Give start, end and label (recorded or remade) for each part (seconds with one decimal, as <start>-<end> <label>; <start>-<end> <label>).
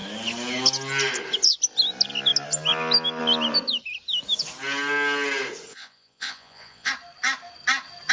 0.0-5.7 recorded; 5.7-6.9 remade; 6.9-8.1 recorded